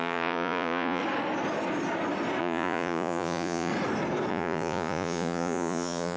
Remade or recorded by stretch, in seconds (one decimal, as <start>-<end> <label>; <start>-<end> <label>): 0.0-1.0 remade; 1.0-2.4 recorded; 2.4-3.7 remade; 3.7-4.3 recorded; 4.3-6.2 remade